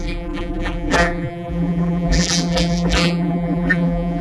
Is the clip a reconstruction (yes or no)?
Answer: yes